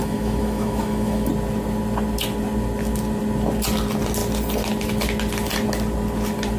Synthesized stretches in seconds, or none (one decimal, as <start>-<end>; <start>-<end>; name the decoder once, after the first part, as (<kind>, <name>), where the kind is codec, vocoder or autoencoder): 0.0-1.3 (autoencoder, DAC-VAE)